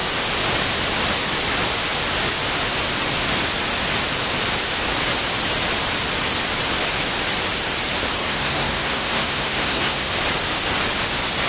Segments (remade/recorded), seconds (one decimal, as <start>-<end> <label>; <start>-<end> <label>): 0.0-8.2 recorded; 8.2-10.1 remade; 10.1-11.5 recorded